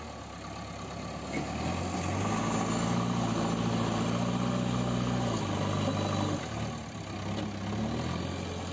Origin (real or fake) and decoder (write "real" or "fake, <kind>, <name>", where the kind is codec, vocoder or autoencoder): real